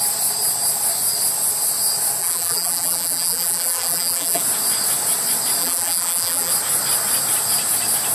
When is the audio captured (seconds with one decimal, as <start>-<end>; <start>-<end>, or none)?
0.0-2.2; 4.4-5.6; 6.5-8.1